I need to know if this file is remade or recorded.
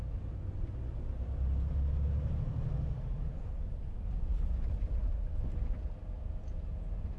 recorded